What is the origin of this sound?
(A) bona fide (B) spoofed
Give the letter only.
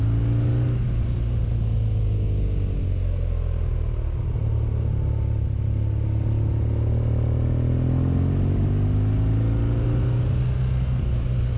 A